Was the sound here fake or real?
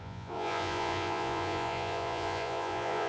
fake